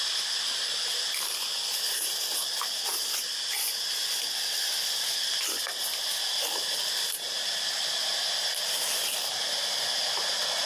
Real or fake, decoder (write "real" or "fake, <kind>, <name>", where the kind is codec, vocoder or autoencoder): real